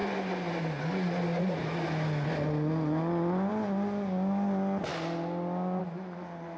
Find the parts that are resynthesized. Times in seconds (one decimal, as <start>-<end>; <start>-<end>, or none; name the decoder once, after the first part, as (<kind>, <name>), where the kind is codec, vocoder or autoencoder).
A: none